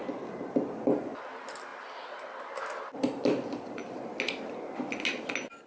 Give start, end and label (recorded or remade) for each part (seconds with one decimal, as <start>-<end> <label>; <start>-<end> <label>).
0.0-5.7 recorded